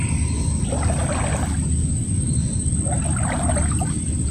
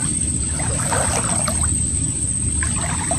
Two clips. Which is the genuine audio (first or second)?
first